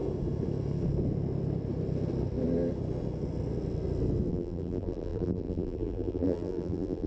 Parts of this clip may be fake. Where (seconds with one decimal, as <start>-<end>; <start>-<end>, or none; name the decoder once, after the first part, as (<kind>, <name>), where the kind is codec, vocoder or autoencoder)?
4.3-7.1 (vocoder, BigVGAN v2)